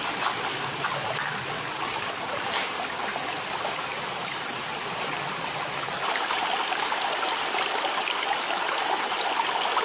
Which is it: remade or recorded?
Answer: remade